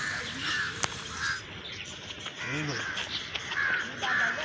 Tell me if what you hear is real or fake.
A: real